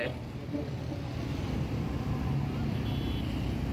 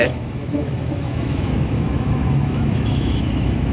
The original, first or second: first